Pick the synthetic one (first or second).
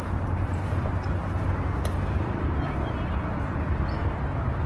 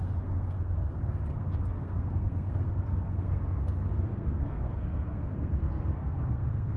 second